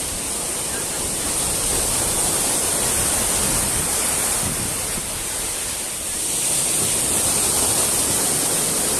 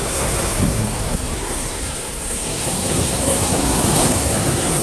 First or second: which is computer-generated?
second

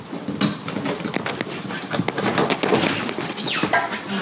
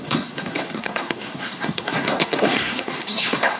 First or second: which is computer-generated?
second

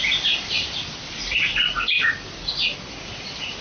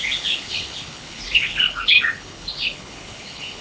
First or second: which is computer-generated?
second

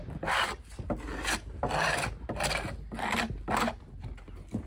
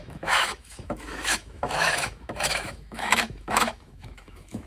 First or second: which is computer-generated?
second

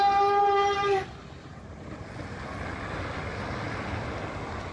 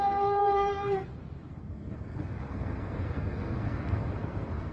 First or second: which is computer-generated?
second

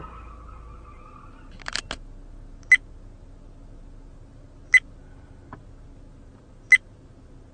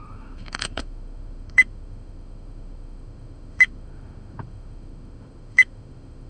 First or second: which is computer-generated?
second